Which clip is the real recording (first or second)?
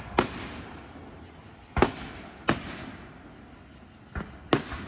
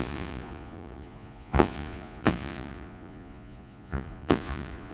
first